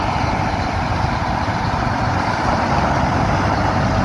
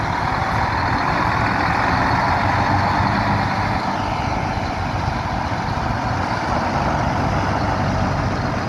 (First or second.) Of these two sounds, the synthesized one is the first